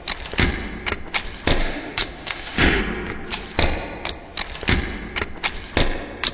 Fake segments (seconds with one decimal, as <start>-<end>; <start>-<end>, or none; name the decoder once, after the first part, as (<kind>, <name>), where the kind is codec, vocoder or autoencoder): 1.6-2.8 (autoencoder, DAC-VAE)

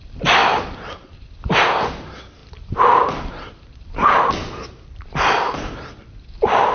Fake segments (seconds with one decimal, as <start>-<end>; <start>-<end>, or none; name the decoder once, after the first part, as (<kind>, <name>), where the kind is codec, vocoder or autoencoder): none

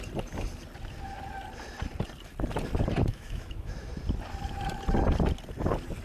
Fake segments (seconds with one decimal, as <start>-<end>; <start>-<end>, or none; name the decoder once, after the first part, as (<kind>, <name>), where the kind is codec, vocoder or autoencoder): 3.1-3.9 (autoencoder, DAC-VAE)

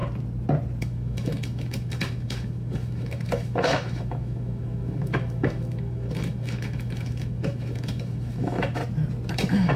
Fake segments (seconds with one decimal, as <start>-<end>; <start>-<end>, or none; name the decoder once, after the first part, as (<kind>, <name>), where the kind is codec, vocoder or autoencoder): 0.8-8.8 (autoencoder, DAC-VAE); 9.3-9.8

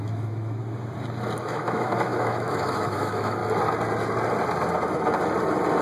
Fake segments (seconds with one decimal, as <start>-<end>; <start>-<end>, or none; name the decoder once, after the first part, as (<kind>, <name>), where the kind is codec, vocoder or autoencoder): 0.0-0.6 (autoencoder, DAC-VAE); 1.4-3.4

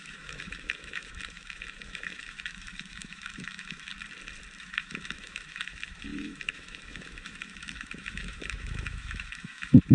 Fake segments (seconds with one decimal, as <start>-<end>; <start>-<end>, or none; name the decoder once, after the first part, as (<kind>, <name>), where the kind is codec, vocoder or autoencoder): 0.0-3.9 (autoencoder, DAC-VAE); 4.6-9.9

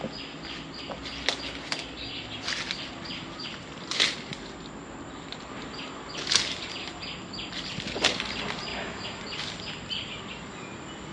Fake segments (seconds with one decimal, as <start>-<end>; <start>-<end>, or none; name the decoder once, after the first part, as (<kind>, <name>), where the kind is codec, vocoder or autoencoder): 8.7-9.2 (autoencoder, DAC-VAE)